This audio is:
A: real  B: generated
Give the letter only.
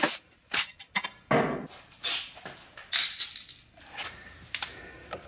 A